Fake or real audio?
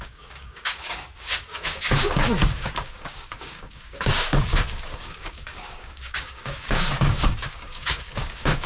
fake